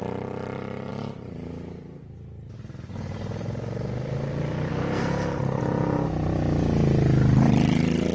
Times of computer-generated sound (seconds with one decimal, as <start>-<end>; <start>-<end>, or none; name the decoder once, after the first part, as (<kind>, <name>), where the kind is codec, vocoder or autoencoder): 4.7-5.6 (codec, SNAC)